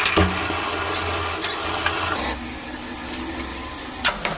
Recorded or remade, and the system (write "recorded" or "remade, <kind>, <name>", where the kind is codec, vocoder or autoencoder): recorded